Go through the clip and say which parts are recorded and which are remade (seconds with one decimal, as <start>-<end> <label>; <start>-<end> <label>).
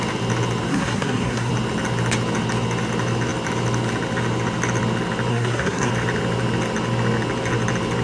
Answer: 0.0-0.7 recorded; 0.7-1.5 remade; 1.5-5.3 recorded; 5.3-5.9 remade; 5.9-8.0 recorded